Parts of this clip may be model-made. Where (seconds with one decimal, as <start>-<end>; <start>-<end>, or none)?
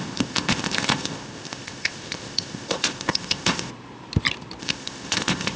0.0-3.7; 4.6-5.6